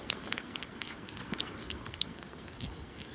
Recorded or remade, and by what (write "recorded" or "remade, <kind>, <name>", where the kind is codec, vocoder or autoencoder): remade, codec, SNAC